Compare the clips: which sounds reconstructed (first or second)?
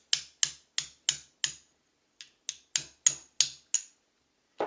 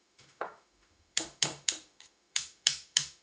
second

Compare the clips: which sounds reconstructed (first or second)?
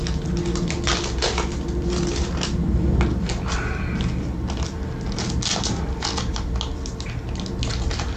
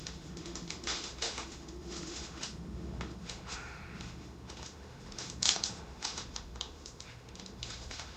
second